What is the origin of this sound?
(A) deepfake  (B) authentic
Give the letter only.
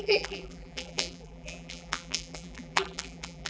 A